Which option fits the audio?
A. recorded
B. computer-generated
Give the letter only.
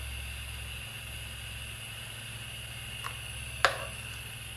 A